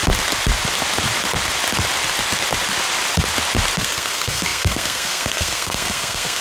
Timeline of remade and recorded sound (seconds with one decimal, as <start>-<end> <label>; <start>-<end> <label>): 0.0-3.8 recorded; 3.8-6.4 remade